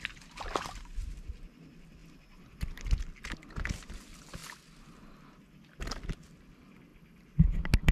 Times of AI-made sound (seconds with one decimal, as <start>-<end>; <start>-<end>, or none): none

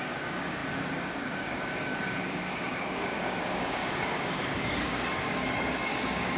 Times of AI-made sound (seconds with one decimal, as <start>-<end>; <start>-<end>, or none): 0.0-6.4